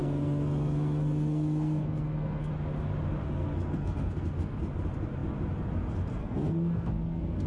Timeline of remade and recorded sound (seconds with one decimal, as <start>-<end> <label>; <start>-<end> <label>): 0.0-2.5 remade; 2.5-3.2 recorded; 3.2-4.6 remade; 4.6-6.2 recorded; 6.2-7.5 remade